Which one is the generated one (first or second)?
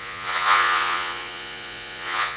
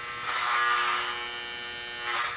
first